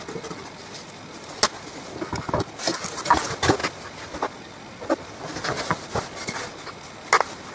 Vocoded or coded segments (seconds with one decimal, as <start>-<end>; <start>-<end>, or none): none